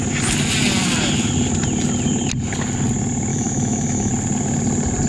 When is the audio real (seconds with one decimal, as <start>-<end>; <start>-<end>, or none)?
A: 0.0-3.3; 4.1-5.1

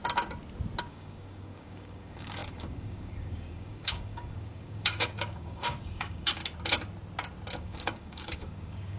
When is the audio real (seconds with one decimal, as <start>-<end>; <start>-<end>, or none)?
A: 0.0-0.8; 6.4-7.6

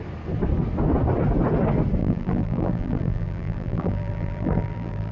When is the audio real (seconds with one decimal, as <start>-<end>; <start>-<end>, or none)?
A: 0.0-2.0

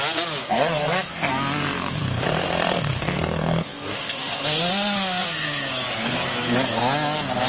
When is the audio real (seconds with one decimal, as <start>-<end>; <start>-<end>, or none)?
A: 0.0-0.4; 1.3-2.0; 5.7-7.5